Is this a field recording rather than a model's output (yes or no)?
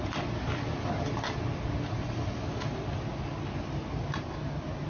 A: yes